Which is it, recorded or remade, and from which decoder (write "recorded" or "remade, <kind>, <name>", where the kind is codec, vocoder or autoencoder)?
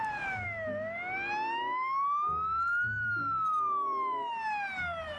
recorded